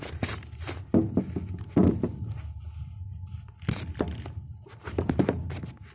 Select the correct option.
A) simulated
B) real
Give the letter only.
B